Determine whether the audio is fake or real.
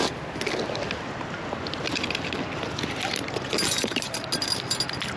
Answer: real